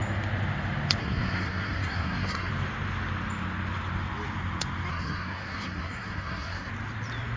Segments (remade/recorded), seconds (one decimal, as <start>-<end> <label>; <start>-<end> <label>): 0.0-1.0 recorded; 1.0-2.5 remade; 2.5-4.9 recorded; 4.9-6.7 remade; 6.7-7.4 recorded